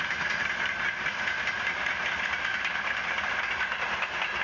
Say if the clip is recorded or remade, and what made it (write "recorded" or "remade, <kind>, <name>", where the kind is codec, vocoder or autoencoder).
recorded